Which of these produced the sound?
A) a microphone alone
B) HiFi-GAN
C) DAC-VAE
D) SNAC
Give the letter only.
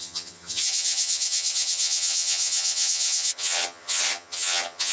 B